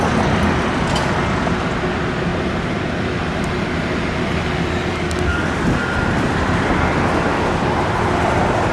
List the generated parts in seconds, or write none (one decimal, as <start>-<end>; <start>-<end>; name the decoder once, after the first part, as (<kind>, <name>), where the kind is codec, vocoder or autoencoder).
4.9-5.6 (codec, DAC)